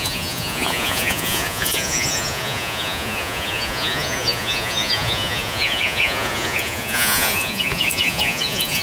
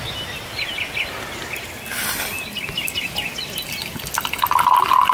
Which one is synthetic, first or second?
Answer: first